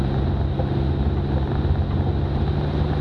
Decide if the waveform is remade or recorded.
recorded